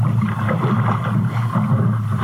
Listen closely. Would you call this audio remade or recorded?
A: recorded